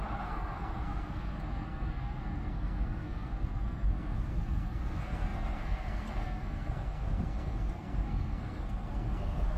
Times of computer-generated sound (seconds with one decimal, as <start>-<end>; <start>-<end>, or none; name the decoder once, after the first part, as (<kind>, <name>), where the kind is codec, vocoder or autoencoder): 0.0-9.6 (codec, SNAC)